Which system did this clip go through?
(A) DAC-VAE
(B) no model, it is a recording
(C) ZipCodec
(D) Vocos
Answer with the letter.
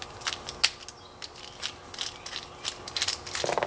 B